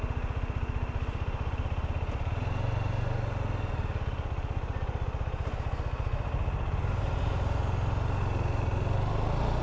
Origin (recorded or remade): recorded